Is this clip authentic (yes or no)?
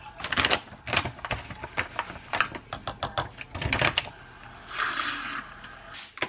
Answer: yes